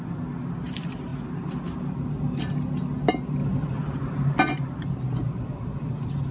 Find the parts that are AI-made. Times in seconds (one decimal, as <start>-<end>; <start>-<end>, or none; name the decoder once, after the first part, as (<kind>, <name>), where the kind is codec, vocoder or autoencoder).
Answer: none